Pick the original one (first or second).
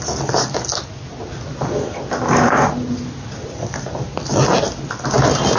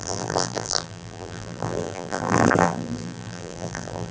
first